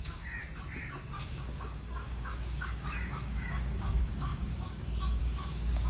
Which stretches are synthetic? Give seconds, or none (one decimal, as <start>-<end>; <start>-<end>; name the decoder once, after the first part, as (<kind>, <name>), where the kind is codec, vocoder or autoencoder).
0.0-0.4 (codec, DAC); 1.2-5.9